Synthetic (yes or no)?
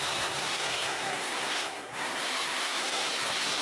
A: yes